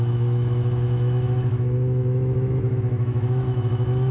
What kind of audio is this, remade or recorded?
remade